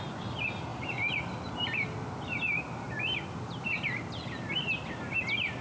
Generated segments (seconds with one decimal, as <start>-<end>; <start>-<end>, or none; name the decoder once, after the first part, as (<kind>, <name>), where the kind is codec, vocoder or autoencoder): none